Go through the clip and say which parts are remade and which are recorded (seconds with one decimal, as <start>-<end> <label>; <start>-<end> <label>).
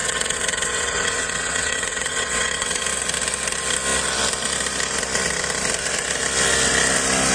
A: 0.0-2.8 remade; 2.8-7.3 recorded